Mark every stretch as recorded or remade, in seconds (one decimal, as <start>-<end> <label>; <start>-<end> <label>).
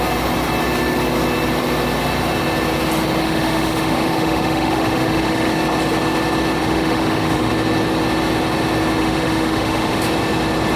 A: 0.0-3.2 recorded; 3.2-5.5 remade; 5.5-6.6 recorded; 6.6-7.5 remade; 7.5-9.0 recorded; 9.0-10.0 remade; 10.0-10.8 recorded